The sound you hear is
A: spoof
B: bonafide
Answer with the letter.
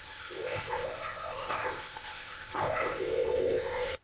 A